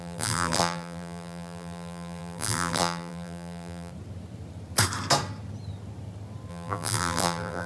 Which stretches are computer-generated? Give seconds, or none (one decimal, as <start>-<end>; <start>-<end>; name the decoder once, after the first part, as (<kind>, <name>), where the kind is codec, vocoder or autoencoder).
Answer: 0.0-3.9 (vocoder, BigVGAN v2); 6.5-7.7